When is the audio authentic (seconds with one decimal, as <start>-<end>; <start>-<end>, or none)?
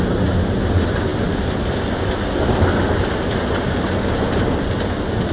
0.0-5.3